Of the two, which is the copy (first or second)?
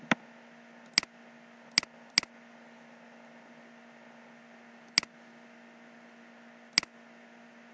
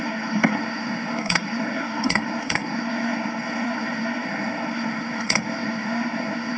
second